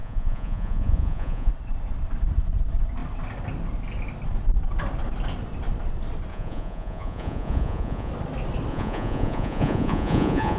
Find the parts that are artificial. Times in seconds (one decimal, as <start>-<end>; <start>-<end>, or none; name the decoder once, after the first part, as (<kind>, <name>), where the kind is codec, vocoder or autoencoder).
0.0-1.5 (vocoder, Vocos); 6.3-8.1; 8.7-10.6